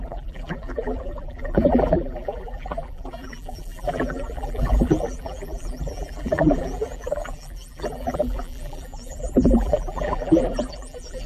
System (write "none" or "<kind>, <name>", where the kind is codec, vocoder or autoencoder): vocoder, BigVGAN v2